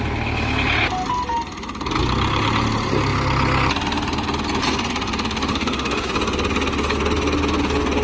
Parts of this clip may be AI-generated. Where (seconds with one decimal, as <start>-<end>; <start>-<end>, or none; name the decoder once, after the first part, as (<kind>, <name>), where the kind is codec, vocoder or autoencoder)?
5.5-6.1 (autoencoder, DAC-VAE)